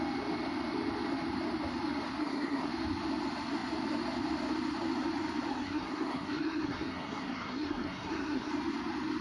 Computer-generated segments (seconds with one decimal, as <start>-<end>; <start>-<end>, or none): 2.2-2.7; 5.5-8.5